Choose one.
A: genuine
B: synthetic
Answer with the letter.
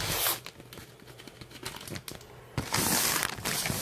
A